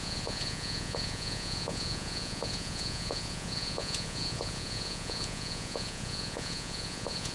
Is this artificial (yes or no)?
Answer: yes